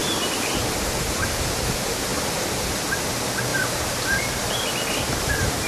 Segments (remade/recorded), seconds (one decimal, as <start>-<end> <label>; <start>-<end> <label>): 0.0-1.6 remade; 1.6-2.1 recorded; 2.1-2.7 remade; 2.7-3.5 recorded; 3.5-4.2 remade; 4.2-5.7 recorded